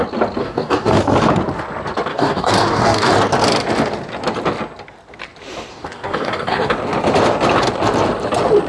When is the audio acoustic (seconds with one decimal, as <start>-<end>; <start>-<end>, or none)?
0.0-0.4; 1.0-2.1; 3.1-5.7; 6.7-8.7